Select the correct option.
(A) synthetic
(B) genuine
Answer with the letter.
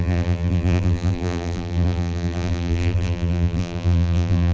A